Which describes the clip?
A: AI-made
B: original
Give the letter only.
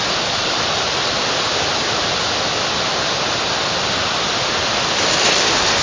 B